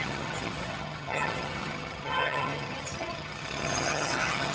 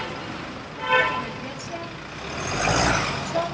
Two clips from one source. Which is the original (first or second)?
second